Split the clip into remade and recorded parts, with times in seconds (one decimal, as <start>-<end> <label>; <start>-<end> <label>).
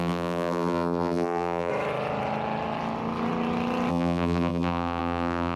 0.0-1.7 remade; 1.7-3.9 recorded; 3.9-5.6 remade